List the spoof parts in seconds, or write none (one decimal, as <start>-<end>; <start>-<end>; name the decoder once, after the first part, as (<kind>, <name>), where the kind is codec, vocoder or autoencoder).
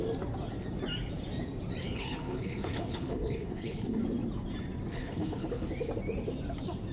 1.8-4.0 (codec, HILCodec); 4.9-5.7